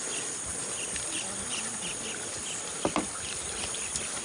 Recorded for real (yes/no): yes